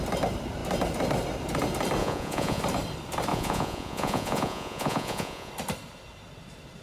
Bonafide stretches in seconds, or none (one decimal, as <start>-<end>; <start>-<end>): 0.0-2.0; 2.6-3.3; 5.5-6.8